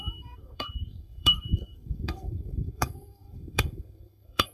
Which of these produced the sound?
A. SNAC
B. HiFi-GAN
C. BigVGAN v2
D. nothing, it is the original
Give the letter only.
A